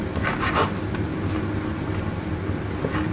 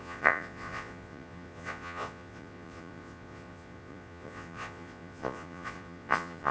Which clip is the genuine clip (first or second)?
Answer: first